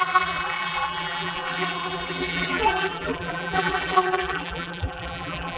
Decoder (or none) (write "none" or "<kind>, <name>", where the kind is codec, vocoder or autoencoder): vocoder, BigVGAN v2